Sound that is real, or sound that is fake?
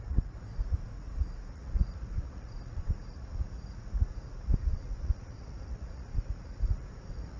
fake